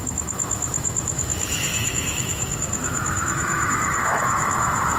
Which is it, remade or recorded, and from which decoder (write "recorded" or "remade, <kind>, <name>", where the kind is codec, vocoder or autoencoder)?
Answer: remade, autoencoder, DAC-VAE